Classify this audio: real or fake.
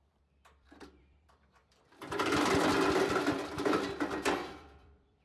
fake